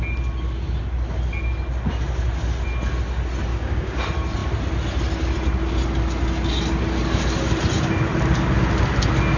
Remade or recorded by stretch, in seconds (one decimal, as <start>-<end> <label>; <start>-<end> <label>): 0.0-3.5 recorded; 3.5-4.0 remade; 4.0-9.4 recorded